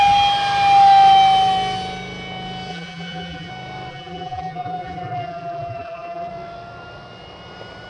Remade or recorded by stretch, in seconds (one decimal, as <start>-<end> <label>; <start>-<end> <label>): 0.0-2.7 recorded; 2.7-3.5 remade; 3.5-3.9 recorded; 3.9-6.3 remade; 6.3-7.9 recorded